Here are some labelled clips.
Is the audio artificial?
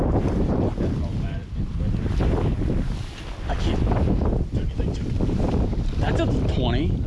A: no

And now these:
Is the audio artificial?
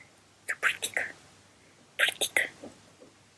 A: no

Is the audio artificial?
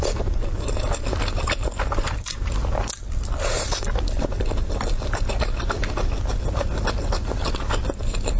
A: no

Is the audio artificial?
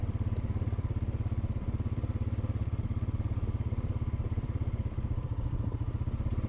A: yes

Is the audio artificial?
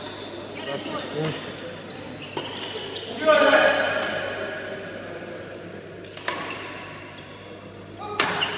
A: no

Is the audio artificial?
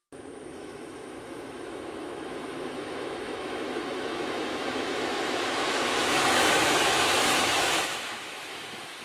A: yes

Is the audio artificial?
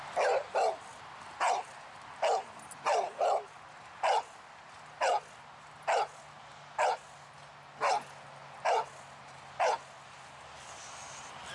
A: no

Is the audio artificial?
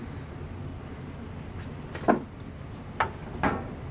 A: no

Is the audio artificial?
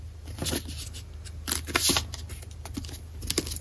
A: no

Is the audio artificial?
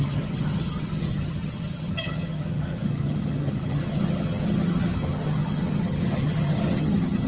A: yes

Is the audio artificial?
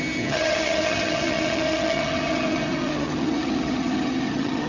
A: yes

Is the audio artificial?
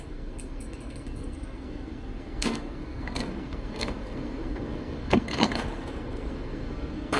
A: yes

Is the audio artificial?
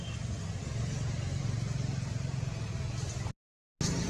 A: no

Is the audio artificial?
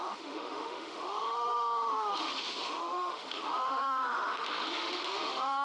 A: yes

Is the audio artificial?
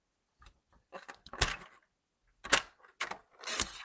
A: no